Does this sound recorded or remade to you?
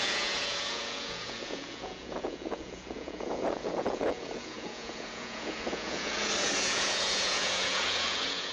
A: remade